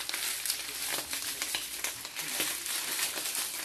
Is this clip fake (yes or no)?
no